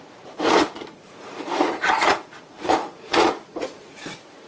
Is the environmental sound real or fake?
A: fake